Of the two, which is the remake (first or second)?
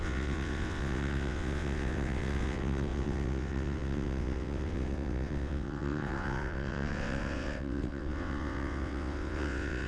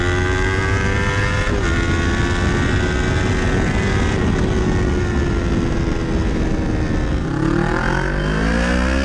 first